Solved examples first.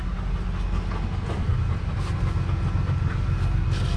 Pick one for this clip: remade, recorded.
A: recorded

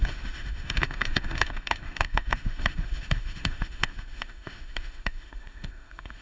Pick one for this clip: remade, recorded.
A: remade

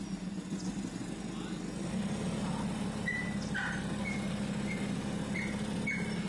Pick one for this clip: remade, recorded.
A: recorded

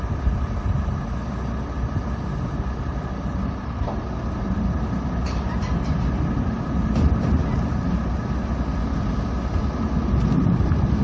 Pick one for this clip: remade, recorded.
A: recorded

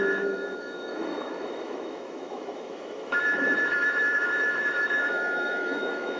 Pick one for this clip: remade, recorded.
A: remade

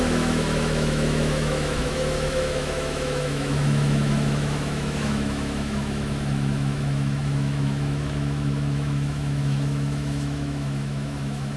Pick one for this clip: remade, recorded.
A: remade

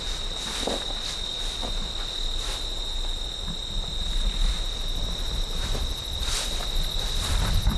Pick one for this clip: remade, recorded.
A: recorded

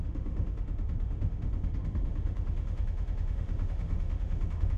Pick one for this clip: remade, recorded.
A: remade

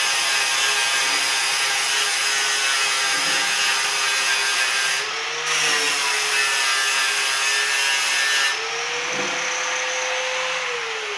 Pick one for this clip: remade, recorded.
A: recorded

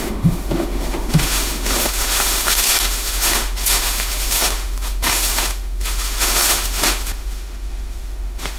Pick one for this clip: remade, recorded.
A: remade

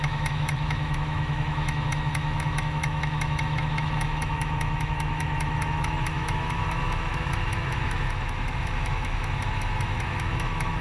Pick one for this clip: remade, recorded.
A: remade